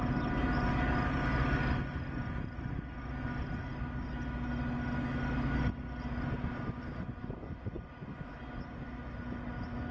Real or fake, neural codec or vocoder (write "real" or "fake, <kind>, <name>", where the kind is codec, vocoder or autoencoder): real